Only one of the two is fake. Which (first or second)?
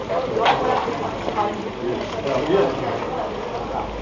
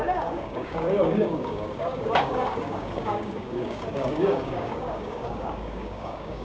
second